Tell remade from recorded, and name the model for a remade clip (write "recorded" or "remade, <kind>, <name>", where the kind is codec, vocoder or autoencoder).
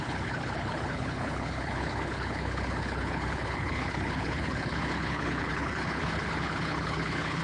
remade, codec, HILCodec